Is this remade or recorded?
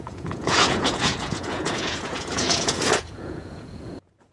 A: remade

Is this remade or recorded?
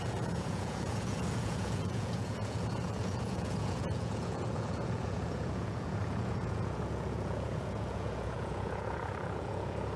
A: remade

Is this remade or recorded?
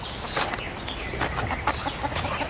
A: recorded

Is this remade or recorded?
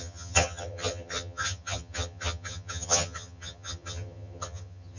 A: remade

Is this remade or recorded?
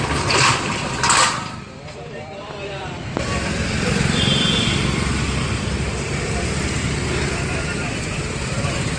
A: remade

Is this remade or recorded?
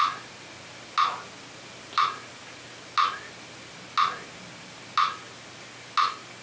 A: recorded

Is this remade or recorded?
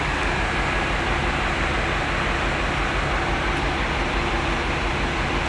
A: recorded